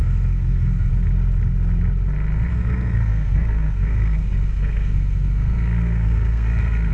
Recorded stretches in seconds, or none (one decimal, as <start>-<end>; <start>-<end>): 0.9-2.5